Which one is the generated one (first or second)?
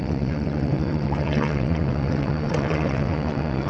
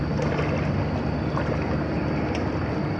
first